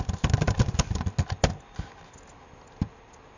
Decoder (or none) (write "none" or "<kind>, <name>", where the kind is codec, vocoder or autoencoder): none